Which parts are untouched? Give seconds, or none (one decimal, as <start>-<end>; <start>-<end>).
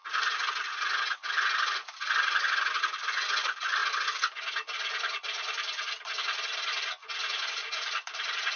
0.0-7.6